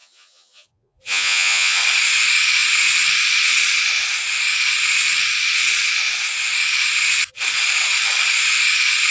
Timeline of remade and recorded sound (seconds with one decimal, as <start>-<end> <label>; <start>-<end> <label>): 0.0-1.8 remade; 1.8-9.1 recorded